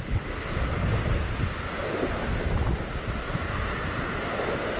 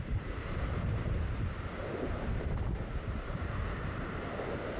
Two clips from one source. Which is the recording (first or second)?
first